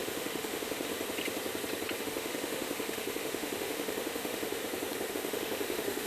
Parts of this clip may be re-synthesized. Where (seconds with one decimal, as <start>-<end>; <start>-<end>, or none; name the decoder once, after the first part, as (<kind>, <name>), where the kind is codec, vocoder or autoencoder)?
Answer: 0.0-0.9 (autoencoder, DAC-VAE); 2.0-4.6; 5.1-6.1